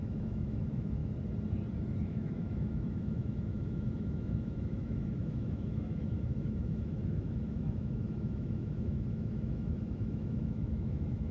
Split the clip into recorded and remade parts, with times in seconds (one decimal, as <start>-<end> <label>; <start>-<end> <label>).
0.0-1.0 remade; 1.0-2.0 recorded; 2.0-11.3 remade